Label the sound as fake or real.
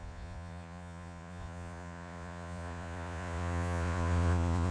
fake